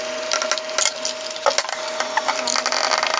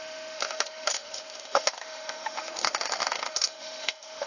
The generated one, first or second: second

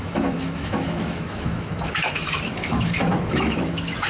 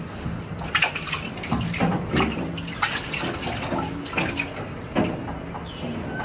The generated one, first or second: first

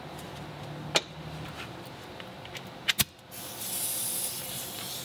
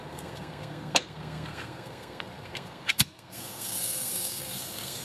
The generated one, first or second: second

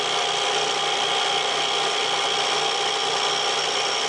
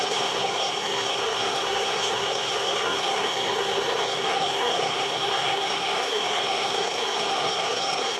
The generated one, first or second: second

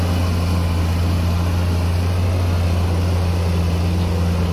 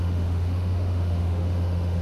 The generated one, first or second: second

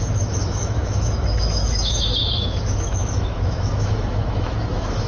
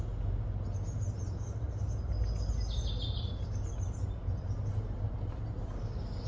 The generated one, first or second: first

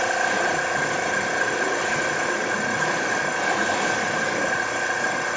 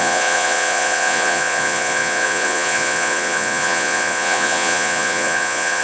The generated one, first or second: second